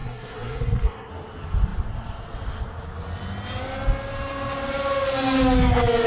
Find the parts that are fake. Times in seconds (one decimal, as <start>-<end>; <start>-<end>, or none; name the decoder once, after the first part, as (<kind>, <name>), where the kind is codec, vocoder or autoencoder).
0.0-1.1 (codec, SNAC)